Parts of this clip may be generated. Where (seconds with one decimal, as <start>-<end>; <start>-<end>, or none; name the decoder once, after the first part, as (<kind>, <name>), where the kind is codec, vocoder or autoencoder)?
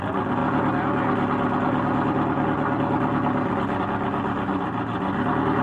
none